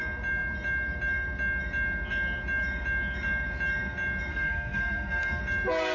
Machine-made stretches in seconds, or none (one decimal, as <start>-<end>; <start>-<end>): 4.3-5.4